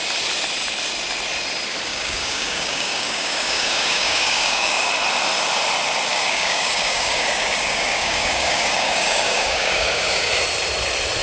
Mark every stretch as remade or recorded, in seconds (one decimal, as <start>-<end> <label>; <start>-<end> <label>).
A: 0.0-1.9 recorded; 1.9-4.9 remade; 4.9-6.1 recorded; 6.1-10.3 remade; 10.3-11.2 recorded